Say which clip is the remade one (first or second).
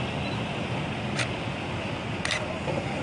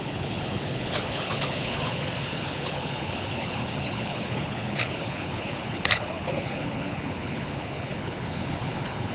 second